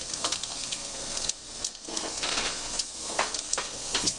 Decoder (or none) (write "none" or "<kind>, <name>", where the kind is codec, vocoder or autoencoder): codec, SNAC